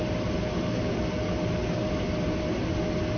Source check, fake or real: real